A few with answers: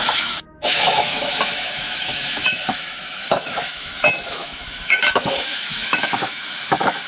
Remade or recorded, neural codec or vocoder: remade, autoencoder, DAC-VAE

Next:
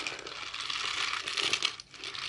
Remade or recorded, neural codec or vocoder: recorded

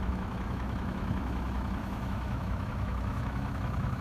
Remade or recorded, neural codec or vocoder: remade, autoencoder, DAC-VAE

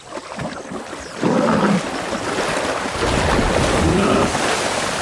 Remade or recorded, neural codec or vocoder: recorded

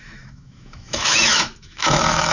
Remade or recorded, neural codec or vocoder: remade, autoencoder, DAC-VAE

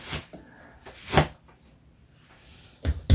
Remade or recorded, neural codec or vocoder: recorded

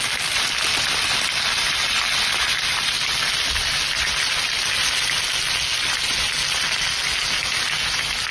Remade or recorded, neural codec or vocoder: recorded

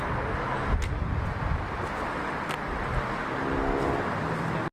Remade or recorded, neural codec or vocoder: recorded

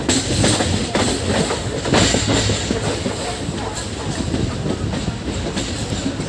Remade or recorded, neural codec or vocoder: recorded